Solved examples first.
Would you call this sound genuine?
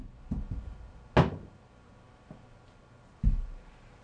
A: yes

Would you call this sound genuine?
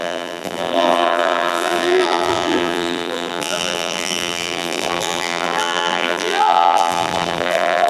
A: no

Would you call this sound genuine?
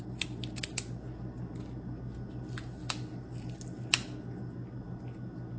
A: yes